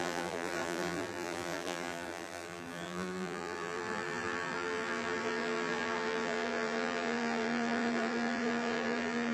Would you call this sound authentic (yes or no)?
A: no